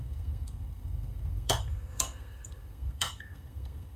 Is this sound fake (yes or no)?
yes